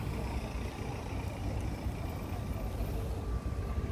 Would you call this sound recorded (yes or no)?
yes